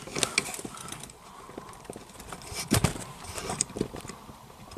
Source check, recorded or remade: recorded